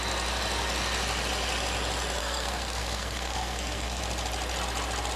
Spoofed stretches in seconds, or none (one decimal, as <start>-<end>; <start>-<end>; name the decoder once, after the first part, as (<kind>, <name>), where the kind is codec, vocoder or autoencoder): 2.2-4.0 (codec, SNAC)